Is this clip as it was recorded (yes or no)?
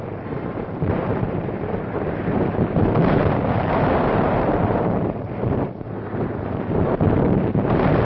no